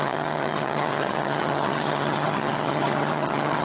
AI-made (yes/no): yes